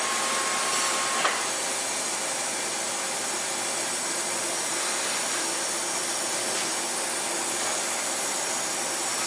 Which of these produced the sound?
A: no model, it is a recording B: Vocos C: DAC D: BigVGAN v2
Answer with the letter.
A